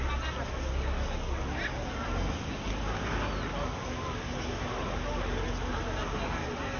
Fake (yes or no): no